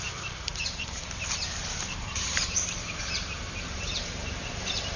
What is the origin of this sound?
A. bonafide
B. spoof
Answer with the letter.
B